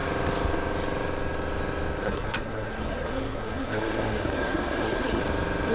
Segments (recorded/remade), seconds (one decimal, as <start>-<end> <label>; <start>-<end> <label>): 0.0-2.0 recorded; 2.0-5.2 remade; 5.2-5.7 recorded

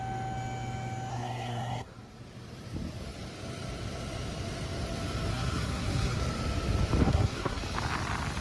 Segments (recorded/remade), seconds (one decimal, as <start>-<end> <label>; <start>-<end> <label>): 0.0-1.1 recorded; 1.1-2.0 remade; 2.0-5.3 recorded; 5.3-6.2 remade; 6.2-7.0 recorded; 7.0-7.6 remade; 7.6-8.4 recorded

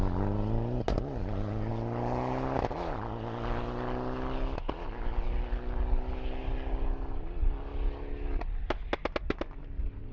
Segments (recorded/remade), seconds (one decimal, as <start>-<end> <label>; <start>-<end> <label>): 0.0-10.1 recorded

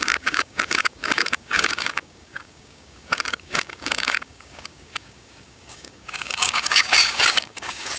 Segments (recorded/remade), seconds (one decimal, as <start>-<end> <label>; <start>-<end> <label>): 0.0-8.0 remade

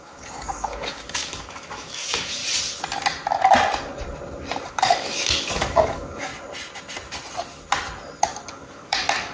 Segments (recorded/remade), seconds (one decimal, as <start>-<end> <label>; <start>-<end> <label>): 0.0-2.4 remade; 2.4-4.7 recorded; 4.7-6.3 remade; 6.3-8.5 recorded; 8.5-9.3 remade

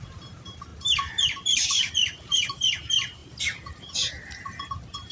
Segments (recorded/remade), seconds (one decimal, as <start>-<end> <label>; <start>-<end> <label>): 0.0-0.7 remade; 0.7-1.9 recorded; 1.9-5.1 remade

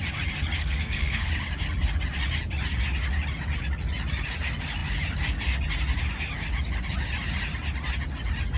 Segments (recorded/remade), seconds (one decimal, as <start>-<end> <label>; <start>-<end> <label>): 0.0-0.6 recorded; 0.6-1.3 remade; 1.3-8.6 recorded

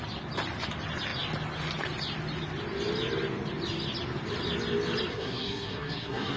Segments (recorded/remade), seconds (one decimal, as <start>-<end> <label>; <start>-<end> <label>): 0.0-5.1 recorded; 5.1-6.4 remade